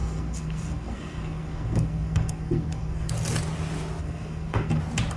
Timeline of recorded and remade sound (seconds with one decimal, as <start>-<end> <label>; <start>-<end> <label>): 0.0-3.1 remade; 3.1-4.0 recorded; 4.0-4.8 remade; 4.8-5.2 recorded